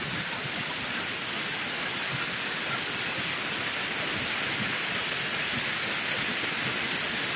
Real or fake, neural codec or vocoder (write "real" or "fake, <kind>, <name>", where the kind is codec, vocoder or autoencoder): real